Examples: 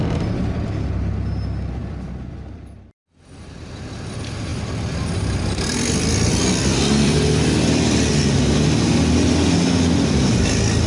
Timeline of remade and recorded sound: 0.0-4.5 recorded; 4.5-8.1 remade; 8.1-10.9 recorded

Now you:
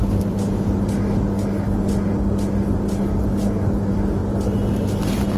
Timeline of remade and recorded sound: 0.0-5.4 recorded

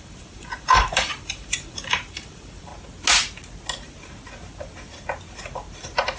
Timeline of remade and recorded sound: 0.0-2.7 remade; 2.7-6.2 recorded

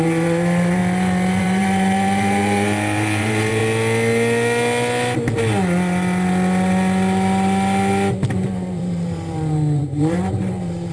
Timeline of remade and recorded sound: 0.0-0.8 remade; 0.8-1.4 recorded; 1.4-3.6 remade; 3.6-8.4 recorded; 8.4-10.9 remade